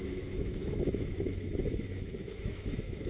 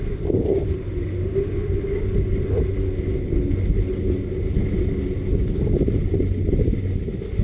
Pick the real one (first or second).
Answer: second